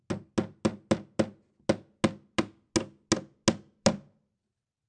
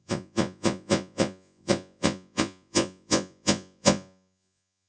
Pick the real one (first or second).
first